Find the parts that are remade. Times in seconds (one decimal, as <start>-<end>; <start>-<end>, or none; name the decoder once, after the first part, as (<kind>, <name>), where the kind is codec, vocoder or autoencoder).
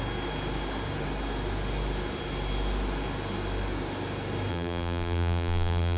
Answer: 4.5-6.0 (vocoder, BigVGAN v2)